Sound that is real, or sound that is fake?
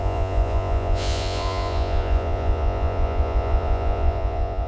fake